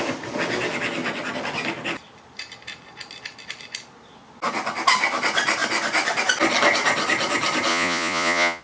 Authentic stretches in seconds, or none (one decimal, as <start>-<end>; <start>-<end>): 0.0-7.7